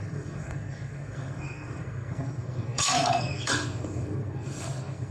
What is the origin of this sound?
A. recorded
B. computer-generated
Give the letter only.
B